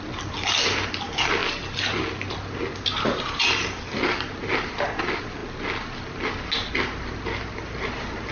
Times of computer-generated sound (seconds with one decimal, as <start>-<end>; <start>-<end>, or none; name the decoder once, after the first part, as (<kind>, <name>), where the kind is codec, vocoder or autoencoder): none